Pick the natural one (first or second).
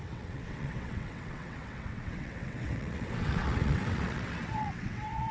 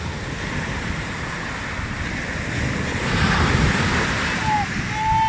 second